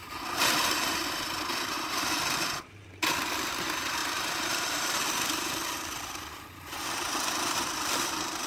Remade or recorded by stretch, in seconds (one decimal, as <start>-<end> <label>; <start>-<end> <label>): 0.0-8.5 remade